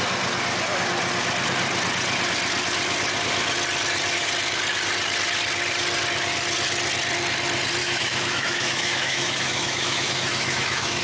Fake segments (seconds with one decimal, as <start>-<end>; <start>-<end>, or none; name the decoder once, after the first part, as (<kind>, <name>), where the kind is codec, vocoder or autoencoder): 7.8-11.0 (autoencoder, DAC-VAE)